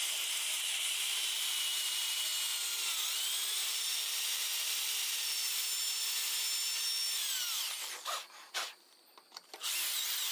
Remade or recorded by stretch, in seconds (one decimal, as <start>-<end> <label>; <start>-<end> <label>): 0.0-2.3 remade; 2.3-3.3 recorded; 3.3-5.6 remade; 5.6-9.5 recorded; 9.5-10.3 remade